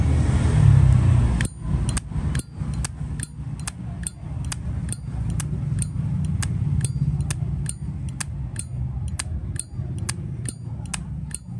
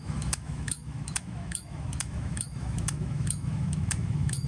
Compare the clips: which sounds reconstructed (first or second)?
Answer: second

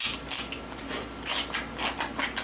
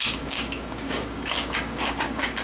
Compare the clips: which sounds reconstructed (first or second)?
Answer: second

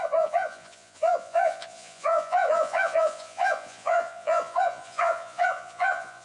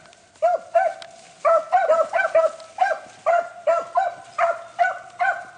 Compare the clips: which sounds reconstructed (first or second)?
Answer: first